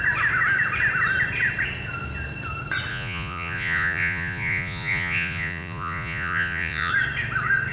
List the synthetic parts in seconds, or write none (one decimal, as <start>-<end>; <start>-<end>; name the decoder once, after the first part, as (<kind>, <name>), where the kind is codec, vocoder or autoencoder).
2.9-6.9 (vocoder, Vocos)